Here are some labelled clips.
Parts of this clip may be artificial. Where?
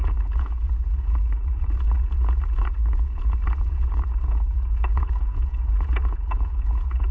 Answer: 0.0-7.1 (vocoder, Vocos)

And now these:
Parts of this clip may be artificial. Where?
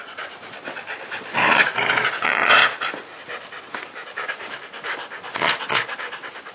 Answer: 0.0-2.6 (vocoder, Vocos)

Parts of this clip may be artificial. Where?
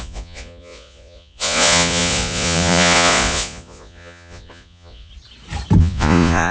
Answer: 0.0-5.1 (vocoder, Vocos); 5.8-6.5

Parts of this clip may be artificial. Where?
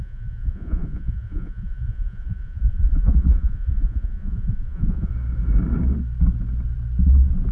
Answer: 0.0-5.1 (vocoder, Vocos)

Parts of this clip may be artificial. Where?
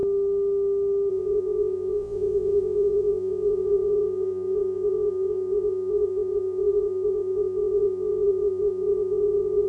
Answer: 1.1-9.7 (vocoder, Vocos)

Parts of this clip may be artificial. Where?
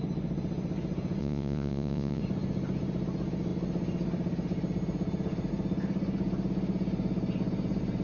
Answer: 1.2-2.2 (vocoder, Vocos)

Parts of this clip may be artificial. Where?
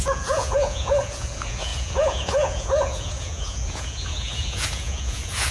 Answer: 0.0-5.5 (vocoder, Vocos)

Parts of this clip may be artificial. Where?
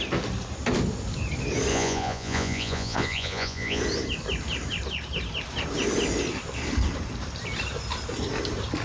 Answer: 1.7-3.8 (vocoder, Vocos)